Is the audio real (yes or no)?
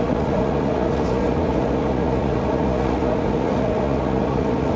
no